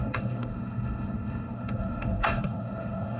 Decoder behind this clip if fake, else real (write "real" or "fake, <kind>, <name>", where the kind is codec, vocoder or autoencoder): fake, codec, SNAC